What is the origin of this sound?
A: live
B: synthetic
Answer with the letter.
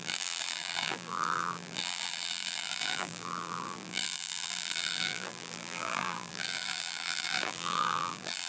B